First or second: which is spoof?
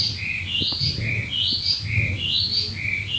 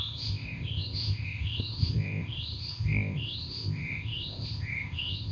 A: second